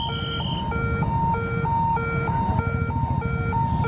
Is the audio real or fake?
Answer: real